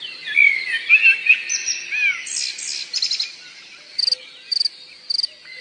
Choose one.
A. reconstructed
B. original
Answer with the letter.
B